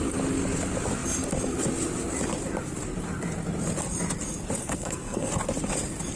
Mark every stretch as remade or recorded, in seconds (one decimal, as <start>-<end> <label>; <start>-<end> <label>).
0.0-4.6 recorded; 4.6-5.3 remade; 5.3-6.2 recorded